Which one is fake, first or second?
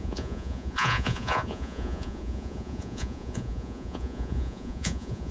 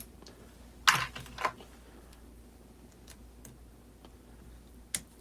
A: first